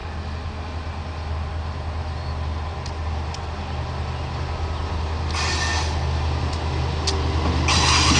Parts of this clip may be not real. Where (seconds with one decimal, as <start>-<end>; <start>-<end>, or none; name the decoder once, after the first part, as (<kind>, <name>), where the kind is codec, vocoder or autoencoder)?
none